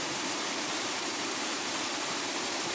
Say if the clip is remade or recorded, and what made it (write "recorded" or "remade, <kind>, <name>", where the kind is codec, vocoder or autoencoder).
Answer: remade, vocoder, BigVGAN v2